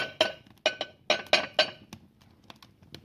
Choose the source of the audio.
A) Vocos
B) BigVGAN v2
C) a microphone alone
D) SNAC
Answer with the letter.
C